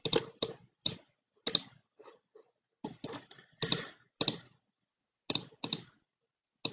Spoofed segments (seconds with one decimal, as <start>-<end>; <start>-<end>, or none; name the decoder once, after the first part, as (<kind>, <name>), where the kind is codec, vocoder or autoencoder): none